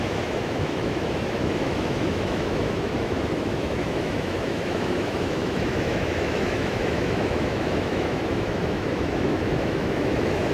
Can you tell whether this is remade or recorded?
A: remade